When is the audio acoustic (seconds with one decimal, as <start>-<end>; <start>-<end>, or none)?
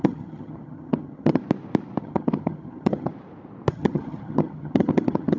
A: 1.4-2.0; 3.1-3.7